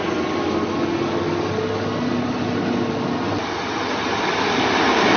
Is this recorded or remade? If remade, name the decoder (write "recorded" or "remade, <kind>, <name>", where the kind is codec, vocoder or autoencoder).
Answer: recorded